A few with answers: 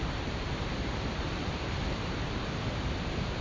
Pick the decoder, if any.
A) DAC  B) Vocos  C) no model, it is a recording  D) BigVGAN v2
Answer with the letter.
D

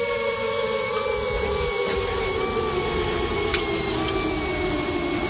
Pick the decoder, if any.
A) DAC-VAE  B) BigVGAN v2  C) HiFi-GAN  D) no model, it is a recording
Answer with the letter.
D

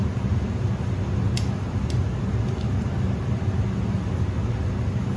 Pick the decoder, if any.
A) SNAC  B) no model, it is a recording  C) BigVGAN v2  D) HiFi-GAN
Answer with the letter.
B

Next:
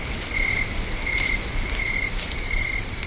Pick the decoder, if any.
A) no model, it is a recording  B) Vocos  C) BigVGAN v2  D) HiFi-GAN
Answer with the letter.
A